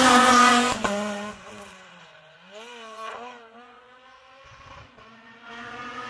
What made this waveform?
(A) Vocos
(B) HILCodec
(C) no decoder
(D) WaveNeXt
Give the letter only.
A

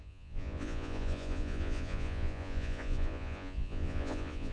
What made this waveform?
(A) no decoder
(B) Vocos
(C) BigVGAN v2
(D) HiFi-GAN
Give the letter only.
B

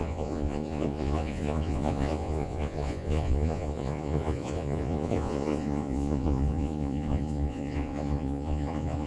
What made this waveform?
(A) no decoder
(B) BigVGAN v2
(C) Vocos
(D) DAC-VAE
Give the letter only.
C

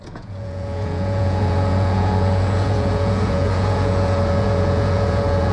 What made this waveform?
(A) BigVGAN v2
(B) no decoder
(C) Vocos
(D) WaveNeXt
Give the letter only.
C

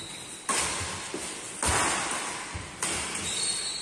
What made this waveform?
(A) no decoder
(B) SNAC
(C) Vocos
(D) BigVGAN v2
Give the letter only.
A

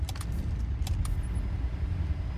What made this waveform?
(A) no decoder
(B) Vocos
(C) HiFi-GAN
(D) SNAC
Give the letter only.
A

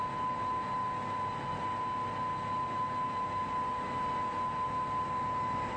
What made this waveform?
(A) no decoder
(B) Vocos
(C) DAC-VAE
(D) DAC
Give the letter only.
A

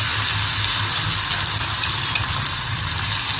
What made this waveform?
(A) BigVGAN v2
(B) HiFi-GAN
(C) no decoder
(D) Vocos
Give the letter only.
C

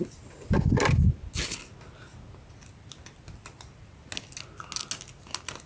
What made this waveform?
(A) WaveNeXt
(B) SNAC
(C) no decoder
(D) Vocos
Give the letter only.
C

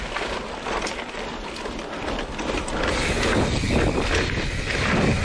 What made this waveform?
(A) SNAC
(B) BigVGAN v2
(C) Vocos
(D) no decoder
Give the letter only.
D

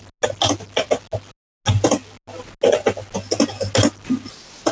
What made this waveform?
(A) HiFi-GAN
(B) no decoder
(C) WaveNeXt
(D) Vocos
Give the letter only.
B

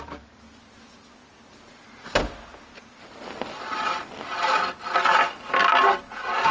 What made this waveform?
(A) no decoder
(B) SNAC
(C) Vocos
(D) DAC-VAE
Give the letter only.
A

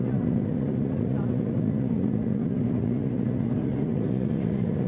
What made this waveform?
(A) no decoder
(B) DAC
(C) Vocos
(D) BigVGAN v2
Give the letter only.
C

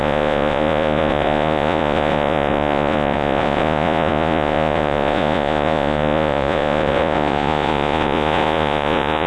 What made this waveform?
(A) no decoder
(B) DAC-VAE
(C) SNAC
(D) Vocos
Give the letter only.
D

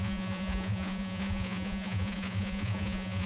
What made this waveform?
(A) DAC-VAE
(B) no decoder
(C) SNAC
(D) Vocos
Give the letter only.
D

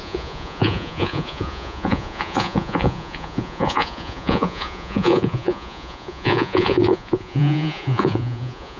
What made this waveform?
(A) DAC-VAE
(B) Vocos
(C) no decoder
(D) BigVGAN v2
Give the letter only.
B